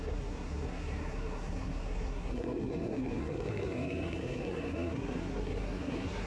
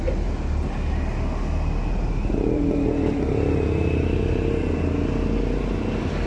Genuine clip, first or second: second